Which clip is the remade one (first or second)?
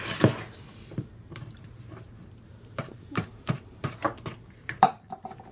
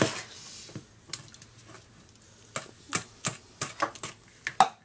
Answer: first